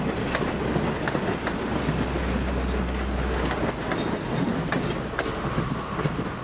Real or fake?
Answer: real